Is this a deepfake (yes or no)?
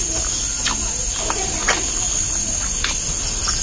no